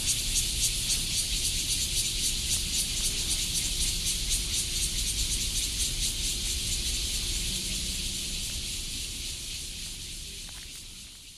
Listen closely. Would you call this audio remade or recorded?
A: recorded